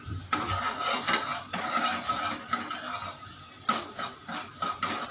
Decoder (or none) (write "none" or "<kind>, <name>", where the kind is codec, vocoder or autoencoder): none